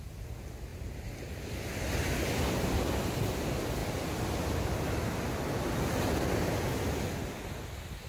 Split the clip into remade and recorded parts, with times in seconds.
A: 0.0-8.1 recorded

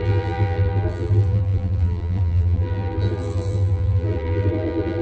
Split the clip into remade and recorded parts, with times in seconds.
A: 0.0-5.0 remade

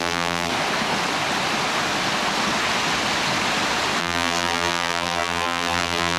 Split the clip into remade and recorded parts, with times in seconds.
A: 0.0-0.5 remade; 0.5-4.0 recorded; 4.0-6.2 remade

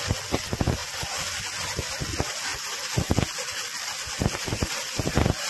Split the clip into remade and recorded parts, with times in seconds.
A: 0.0-0.8 recorded; 0.8-1.4 remade; 1.4-5.5 recorded

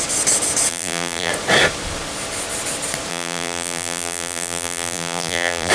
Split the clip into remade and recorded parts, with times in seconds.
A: 0.0-0.7 recorded; 0.7-1.3 remade; 1.3-3.1 recorded; 3.1-5.7 remade

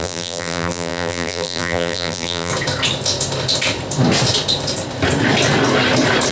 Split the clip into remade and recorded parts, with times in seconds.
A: 0.0-2.5 remade; 2.5-6.3 recorded

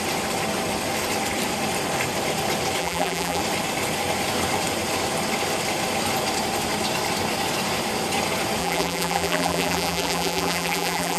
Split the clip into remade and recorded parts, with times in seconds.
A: 0.0-2.8 recorded; 2.8-3.4 remade; 3.4-8.6 recorded; 8.6-11.2 remade